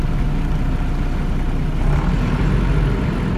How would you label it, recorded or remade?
recorded